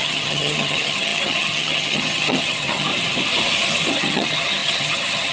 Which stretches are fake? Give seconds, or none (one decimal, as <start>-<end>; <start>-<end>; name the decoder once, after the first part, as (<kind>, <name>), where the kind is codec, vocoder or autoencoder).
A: 0.0-2.9 (vocoder, HiFi-GAN); 3.9-5.3